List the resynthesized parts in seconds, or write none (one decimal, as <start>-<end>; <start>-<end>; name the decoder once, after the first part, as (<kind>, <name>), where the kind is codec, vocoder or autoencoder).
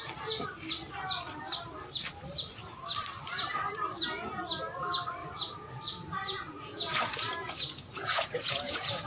5.2-9.1 (vocoder, Vocos)